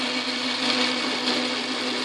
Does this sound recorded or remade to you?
recorded